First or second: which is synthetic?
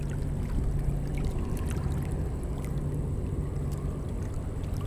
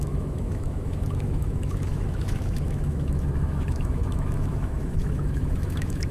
second